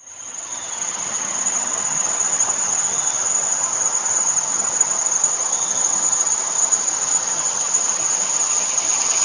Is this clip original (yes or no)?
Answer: no